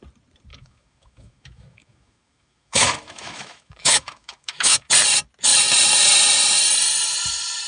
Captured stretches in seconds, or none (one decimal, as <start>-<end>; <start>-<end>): 0.0-0.5; 4.9-7.7